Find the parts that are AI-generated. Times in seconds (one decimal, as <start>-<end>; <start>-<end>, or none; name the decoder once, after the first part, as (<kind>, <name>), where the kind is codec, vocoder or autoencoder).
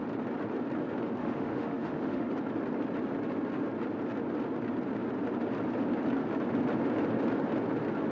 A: 1.2-2.3 (autoencoder, DAC-VAE)